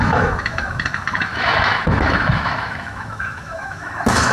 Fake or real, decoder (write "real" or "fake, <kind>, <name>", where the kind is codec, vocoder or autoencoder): fake, autoencoder, DAC-VAE